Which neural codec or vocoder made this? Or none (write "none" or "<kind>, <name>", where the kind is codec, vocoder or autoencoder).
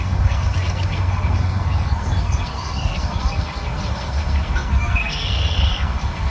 codec, SNAC